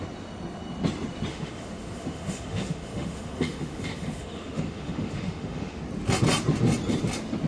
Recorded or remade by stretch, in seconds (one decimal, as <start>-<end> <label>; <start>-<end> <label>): 0.0-1.3 recorded; 1.3-5.8 remade; 5.8-7.5 recorded